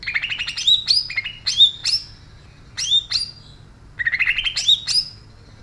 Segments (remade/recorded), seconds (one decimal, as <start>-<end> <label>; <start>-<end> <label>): 0.0-5.6 recorded